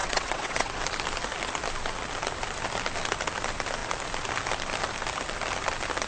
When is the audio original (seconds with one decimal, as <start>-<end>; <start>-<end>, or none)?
0.8-6.1